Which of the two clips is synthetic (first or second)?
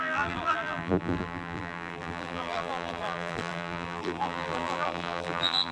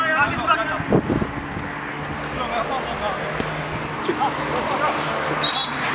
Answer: first